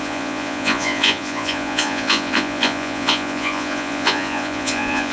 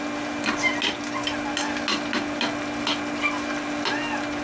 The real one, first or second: second